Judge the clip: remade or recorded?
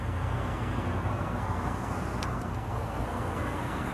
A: remade